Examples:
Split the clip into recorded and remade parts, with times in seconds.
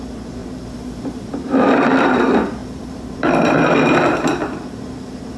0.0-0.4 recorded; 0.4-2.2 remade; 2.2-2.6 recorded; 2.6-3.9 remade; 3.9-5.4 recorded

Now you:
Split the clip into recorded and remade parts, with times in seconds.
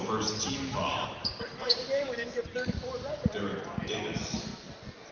0.0-0.9 recorded; 0.9-4.0 remade; 4.0-5.1 recorded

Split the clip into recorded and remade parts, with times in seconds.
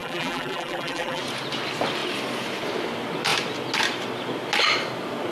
0.0-1.2 remade; 1.2-5.3 recorded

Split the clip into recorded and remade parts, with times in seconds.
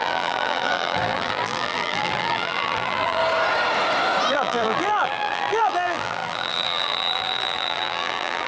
0.0-3.2 remade; 3.2-4.3 recorded; 4.3-8.5 remade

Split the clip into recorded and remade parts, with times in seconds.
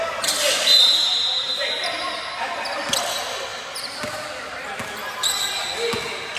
0.0-6.4 recorded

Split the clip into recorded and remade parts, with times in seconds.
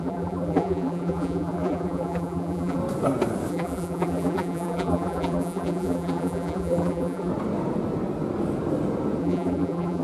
0.0-2.8 remade; 2.8-3.5 recorded; 3.5-7.3 remade; 7.3-9.2 recorded; 9.2-10.0 remade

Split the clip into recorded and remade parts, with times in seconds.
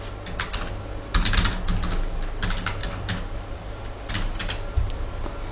0.0-2.8 recorded; 2.8-4.1 remade; 4.1-5.5 recorded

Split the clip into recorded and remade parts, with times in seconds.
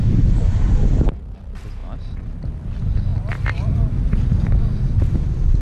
0.0-5.6 remade